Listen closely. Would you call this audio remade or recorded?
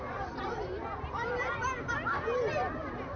recorded